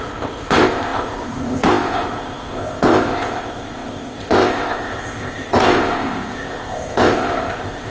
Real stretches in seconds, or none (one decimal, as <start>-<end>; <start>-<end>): none